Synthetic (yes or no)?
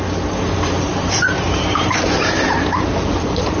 yes